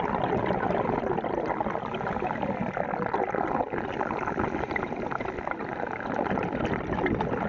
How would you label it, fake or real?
real